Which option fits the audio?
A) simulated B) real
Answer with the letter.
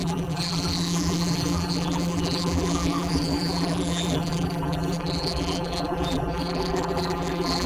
A